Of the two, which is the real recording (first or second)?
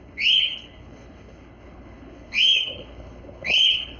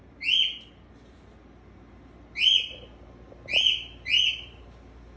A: second